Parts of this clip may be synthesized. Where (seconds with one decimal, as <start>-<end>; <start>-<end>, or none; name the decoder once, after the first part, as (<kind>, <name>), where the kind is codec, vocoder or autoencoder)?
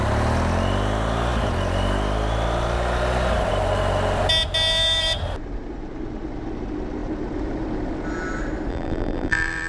8.7-9.7 (vocoder, BigVGAN v2)